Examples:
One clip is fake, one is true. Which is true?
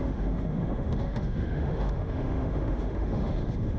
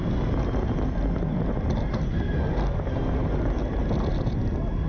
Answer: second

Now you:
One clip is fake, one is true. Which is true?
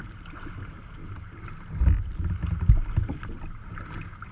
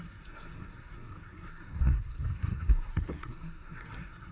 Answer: first